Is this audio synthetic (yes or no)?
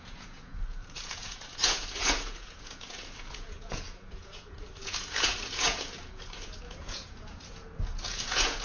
yes